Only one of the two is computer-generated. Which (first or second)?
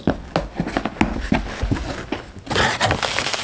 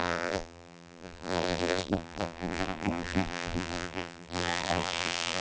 second